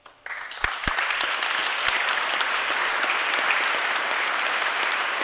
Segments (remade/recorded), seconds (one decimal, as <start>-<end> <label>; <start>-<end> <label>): 0.0-5.2 recorded